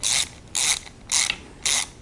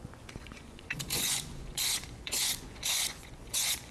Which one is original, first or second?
first